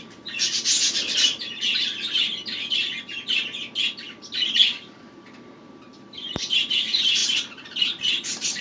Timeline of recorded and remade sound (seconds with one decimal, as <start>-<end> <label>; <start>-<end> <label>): 0.0-1.8 remade; 1.8-6.1 recorded; 6.1-8.6 remade